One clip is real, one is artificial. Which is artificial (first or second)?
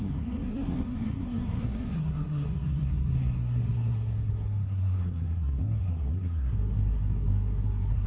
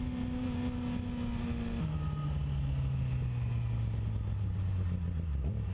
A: first